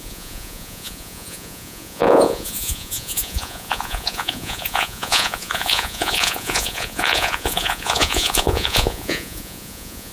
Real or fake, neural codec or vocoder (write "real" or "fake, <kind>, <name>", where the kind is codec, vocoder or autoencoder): fake, vocoder, Vocos